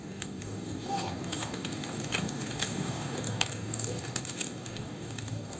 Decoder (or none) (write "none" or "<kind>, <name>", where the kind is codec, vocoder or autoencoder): codec, DAC